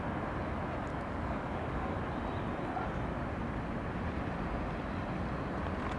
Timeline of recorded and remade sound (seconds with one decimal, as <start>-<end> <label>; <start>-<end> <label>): 0.0-0.9 recorded; 0.9-2.0 remade; 2.0-6.0 recorded

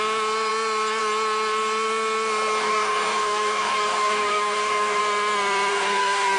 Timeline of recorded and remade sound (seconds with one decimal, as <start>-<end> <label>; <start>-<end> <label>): 0.0-2.6 recorded; 2.6-5.0 remade; 5.0-5.7 recorded; 5.7-6.4 remade